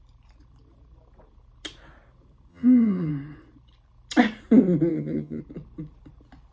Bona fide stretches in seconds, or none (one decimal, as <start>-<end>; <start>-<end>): 0.0-2.5; 3.1-4.9; 5.4-6.5